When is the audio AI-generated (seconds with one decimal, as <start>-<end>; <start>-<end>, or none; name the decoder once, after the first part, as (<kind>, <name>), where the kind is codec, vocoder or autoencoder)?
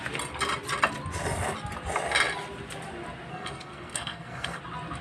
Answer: 3.3-4.6 (codec, SNAC)